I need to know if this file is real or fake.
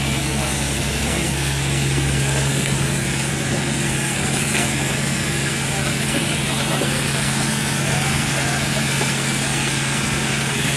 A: fake